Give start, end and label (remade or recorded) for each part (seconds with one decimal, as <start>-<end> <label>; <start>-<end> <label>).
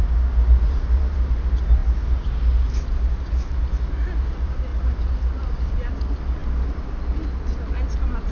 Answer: 0.0-4.7 recorded; 4.7-5.9 remade; 5.9-8.3 recorded